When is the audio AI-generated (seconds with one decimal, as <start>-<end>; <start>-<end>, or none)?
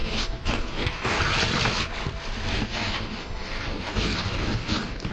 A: 0.0-1.2; 2.5-5.1